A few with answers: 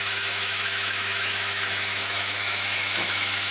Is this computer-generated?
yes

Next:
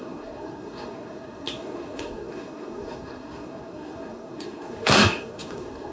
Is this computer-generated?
yes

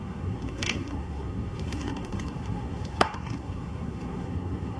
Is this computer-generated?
yes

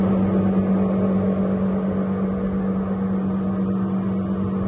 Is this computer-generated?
no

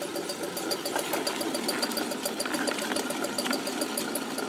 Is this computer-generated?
no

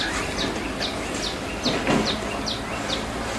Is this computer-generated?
no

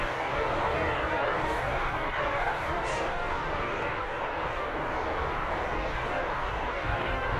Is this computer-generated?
yes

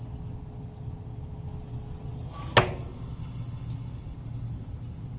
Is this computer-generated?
no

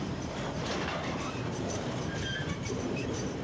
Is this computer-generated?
yes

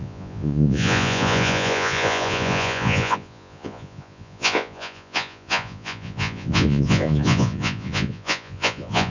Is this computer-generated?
yes